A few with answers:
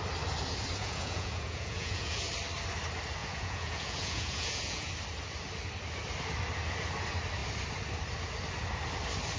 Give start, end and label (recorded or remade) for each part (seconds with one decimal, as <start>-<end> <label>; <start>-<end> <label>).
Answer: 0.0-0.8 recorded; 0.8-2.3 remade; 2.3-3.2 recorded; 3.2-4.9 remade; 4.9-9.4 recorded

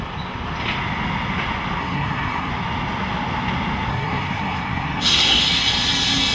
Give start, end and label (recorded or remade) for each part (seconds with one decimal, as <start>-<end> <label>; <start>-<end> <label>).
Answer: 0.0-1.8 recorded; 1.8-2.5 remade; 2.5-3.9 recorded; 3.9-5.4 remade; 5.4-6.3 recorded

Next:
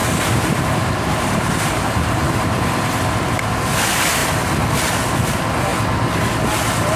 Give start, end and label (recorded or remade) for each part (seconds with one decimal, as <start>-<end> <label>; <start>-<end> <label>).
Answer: 0.0-3.1 remade; 3.1-7.0 recorded